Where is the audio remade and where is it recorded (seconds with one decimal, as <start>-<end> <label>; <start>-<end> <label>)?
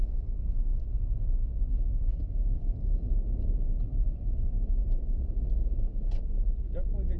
0.0-7.2 remade